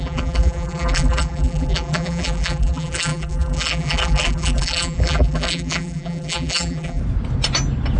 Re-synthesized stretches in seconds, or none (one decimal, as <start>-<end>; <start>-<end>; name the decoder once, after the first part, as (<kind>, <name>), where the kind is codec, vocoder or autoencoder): 0.0-7.0 (vocoder, BigVGAN v2)